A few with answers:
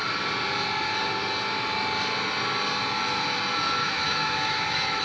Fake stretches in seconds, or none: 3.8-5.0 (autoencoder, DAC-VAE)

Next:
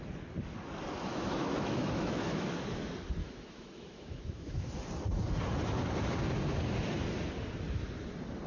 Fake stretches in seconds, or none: 1.1-2.4 (autoencoder, DAC-VAE); 3.2-4.7

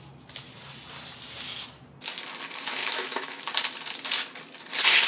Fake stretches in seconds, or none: 2.8-3.4 (autoencoder, DAC-VAE)

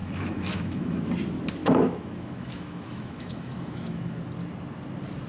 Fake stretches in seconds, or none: 0.0-1.1 (autoencoder, DAC-VAE); 1.6-4.2

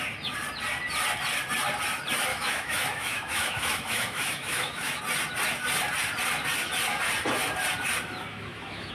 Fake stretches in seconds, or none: 2.3-5.0 (autoencoder, DAC-VAE); 8.3-8.9